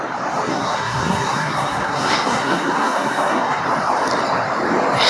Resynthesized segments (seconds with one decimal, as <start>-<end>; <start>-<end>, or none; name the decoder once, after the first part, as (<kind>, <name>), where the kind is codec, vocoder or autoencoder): 0.5-3.6 (codec, SNAC)